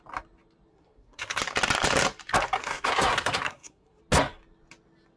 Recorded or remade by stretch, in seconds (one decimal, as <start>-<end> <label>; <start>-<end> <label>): 0.0-0.7 recorded; 0.7-1.4 remade; 1.4-2.6 recorded; 2.6-4.0 remade; 4.0-5.2 recorded